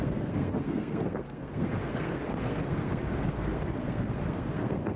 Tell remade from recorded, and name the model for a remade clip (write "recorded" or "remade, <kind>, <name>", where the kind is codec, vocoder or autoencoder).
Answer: remade, codec, SNAC